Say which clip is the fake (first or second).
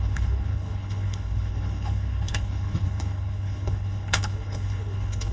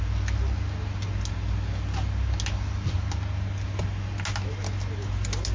first